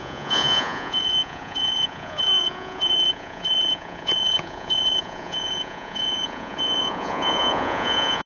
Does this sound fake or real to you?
fake